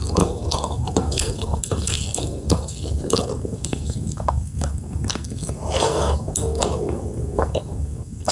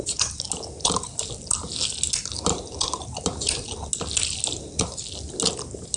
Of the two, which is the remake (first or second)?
first